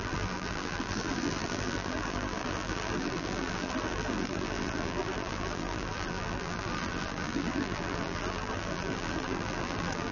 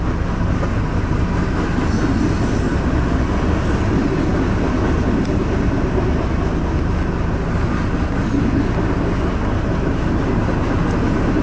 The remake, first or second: first